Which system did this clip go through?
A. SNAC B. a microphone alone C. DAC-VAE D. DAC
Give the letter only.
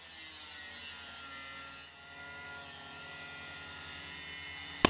B